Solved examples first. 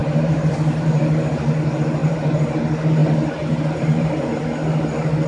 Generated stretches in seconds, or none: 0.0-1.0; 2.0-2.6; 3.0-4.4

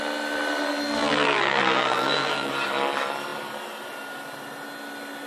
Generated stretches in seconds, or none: 1.0-2.5

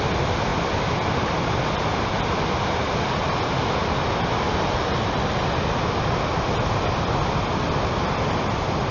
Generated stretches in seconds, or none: none

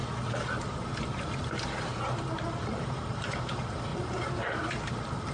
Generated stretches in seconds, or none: 1.8-5.3

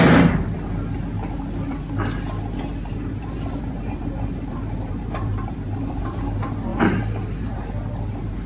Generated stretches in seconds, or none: 2.9-6.0; 6.7-7.5

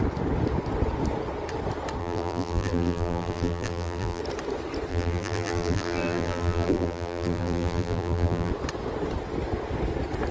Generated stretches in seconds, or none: 2.0-4.2; 4.9-8.5

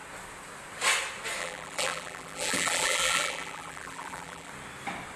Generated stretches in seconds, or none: 1.4-4.5